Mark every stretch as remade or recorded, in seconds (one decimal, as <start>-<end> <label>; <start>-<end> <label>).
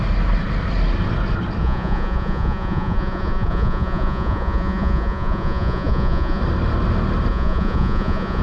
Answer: 0.0-1.6 recorded; 1.6-6.4 remade; 6.4-7.3 recorded; 7.3-8.4 remade